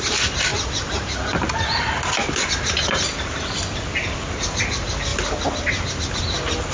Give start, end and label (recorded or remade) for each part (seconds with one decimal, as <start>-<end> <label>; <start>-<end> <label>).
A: 0.0-6.7 recorded